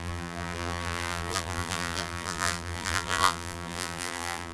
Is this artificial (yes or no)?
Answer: yes